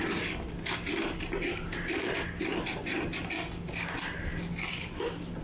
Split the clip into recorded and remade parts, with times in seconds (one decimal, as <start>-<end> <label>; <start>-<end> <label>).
0.0-4.3 recorded; 4.3-5.4 remade